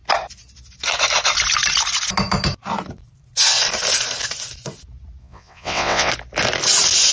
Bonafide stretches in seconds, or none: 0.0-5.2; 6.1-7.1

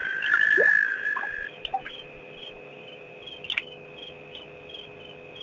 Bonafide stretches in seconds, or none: 3.2-5.4